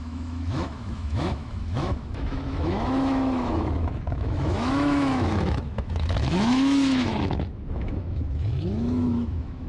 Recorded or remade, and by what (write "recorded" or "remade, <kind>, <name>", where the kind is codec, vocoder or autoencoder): remade, autoencoder, DAC-VAE